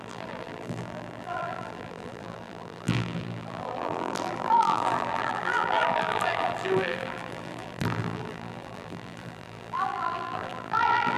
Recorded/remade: remade